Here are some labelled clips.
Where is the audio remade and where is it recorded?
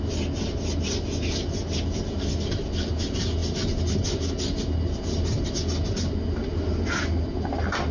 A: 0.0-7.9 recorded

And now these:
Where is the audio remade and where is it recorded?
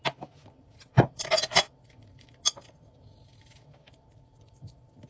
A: 0.0-5.1 recorded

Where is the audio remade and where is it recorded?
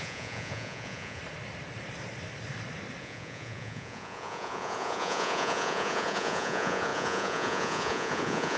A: 0.0-1.2 remade; 1.2-3.0 recorded; 3.0-8.6 remade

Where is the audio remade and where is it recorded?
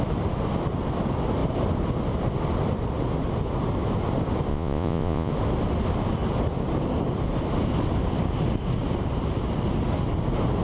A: 0.0-4.5 recorded; 4.5-5.3 remade; 5.3-10.6 recorded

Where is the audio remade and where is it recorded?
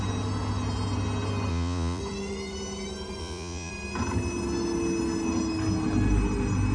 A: 0.0-1.5 recorded; 1.5-2.0 remade; 2.0-3.2 recorded; 3.2-3.7 remade; 3.7-6.7 recorded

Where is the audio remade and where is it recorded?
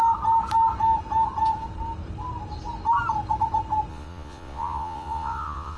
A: 0.0-3.9 recorded; 3.9-5.8 remade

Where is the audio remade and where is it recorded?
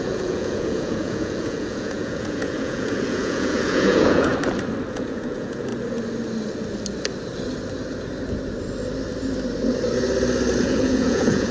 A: 0.0-4.3 remade; 4.3-4.9 recorded; 4.9-5.7 remade; 5.7-10.6 recorded; 10.6-11.5 remade